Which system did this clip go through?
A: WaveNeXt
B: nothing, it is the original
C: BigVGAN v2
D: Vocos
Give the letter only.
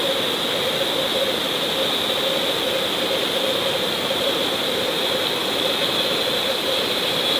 B